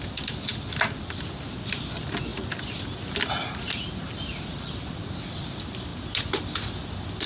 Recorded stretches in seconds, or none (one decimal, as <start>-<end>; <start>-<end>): 0.0-7.3